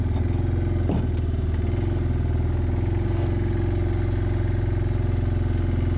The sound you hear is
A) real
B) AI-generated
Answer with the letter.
A